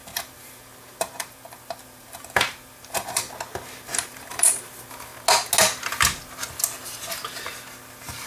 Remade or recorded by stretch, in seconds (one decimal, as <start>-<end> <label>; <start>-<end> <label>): 0.0-3.2 remade; 3.2-3.9 recorded; 3.9-4.6 remade; 4.6-8.3 recorded